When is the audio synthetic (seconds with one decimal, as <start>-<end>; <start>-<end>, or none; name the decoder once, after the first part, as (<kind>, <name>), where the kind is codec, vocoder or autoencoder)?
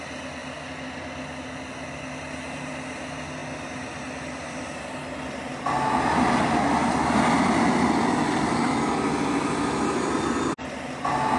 none